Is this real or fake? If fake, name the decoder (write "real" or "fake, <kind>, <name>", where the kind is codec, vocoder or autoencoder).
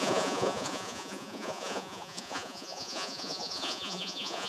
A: fake, vocoder, Vocos